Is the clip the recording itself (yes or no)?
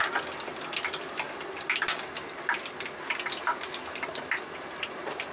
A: yes